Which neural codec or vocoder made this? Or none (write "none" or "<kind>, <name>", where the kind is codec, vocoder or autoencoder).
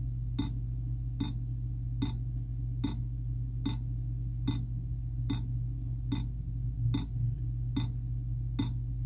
none